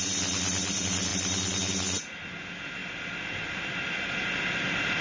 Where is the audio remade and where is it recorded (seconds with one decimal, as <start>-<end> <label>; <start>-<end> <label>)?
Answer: 0.0-5.0 recorded